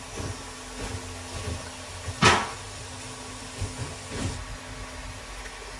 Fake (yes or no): no